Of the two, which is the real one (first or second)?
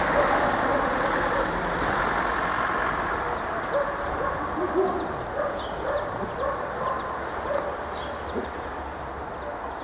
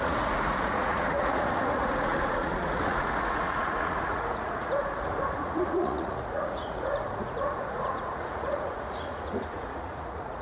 first